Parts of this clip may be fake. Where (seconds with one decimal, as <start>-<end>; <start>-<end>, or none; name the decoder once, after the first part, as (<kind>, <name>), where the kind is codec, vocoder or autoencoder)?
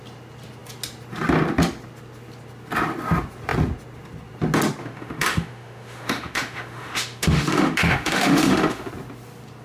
4.8-8.9 (autoencoder, DAC-VAE)